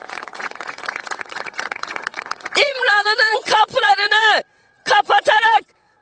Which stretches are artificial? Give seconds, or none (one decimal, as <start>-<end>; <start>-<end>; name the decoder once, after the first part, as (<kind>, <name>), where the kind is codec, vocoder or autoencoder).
0.0-6.0 (vocoder, WaveNeXt)